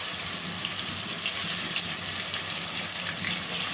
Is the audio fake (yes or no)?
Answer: no